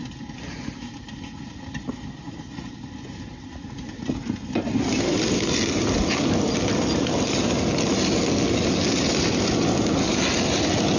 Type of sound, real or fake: real